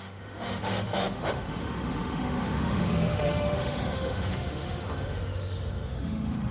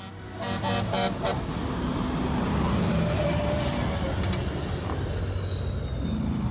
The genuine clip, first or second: second